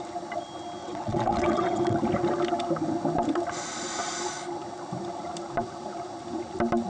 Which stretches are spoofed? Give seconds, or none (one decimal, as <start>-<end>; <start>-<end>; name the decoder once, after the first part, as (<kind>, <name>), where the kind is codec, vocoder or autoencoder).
0.8-2.0 (vocoder, WaveNeXt)